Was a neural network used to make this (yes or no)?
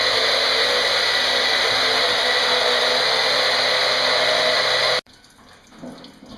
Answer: no